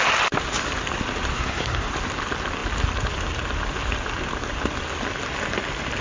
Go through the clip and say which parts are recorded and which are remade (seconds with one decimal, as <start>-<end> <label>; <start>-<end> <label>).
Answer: 0.0-1.3 recorded; 1.3-1.9 remade; 1.9-6.0 recorded